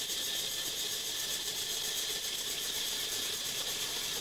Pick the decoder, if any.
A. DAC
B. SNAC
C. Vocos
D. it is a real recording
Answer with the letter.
D